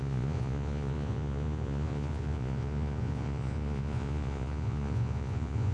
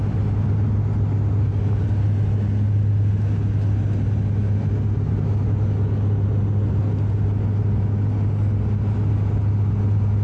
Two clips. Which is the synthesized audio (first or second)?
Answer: first